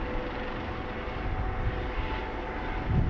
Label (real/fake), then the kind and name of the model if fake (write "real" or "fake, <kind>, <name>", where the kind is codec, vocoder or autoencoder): real